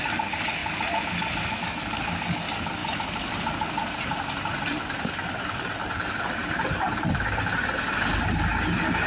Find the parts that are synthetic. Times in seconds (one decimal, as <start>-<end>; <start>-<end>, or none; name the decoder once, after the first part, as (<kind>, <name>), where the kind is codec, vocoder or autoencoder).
0.6-1.5 (vocoder, BigVGAN v2); 2.8-7.4